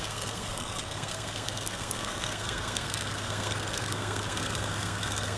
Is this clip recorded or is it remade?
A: remade